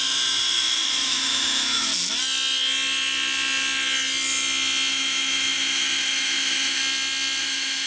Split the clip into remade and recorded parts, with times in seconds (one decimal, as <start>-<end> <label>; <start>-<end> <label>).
0.0-1.9 remade; 1.9-4.9 recorded; 4.9-6.8 remade; 6.8-7.4 recorded; 7.4-7.9 remade